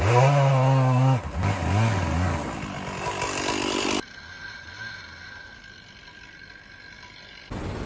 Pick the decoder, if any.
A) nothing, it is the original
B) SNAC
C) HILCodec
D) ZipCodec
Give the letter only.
A